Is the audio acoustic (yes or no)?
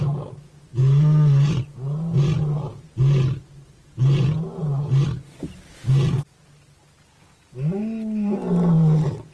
yes